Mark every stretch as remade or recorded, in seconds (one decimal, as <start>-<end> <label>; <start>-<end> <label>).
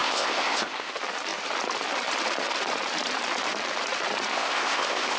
0.0-0.9 remade; 0.9-4.3 recorded; 4.3-5.2 remade